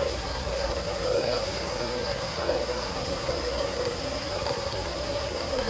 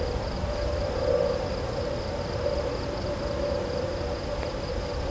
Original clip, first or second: second